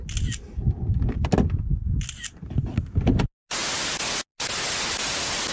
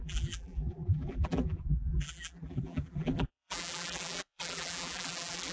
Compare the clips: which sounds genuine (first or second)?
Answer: first